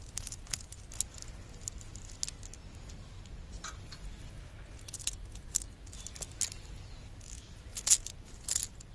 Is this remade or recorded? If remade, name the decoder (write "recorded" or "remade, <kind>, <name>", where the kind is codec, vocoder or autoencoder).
recorded